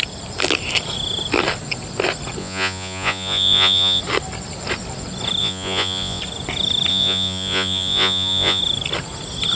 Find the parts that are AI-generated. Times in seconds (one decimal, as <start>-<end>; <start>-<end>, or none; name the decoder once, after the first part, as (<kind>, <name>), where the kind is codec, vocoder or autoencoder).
2.4-4.0 (vocoder, Vocos); 5.4-6.2; 6.9-8.6